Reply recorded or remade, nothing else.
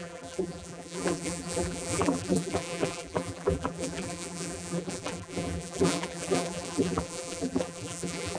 remade